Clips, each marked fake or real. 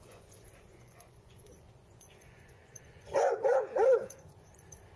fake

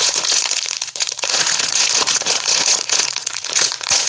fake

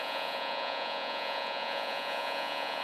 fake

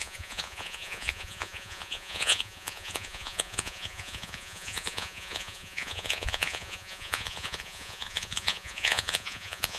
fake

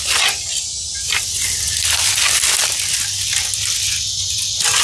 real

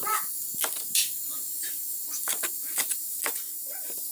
real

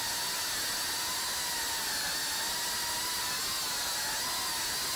real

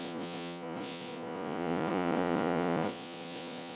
fake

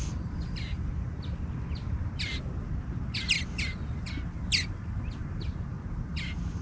real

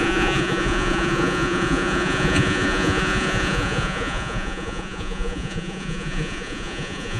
fake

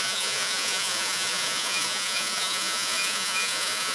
fake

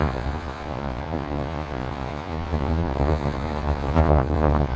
fake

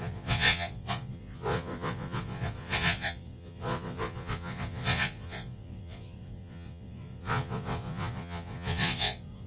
fake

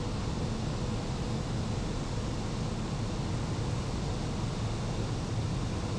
real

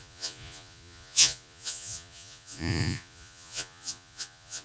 fake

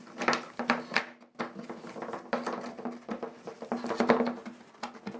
real